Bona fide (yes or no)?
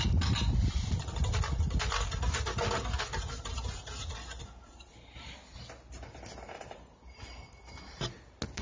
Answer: yes